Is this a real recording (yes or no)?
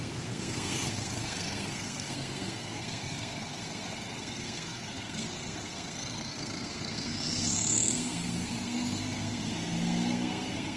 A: no